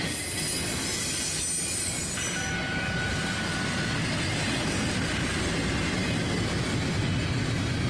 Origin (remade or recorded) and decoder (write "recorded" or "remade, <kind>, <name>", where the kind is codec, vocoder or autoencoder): recorded